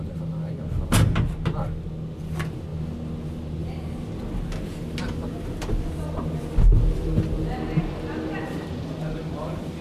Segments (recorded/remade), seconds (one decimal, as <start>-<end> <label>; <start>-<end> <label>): 0.0-9.8 recorded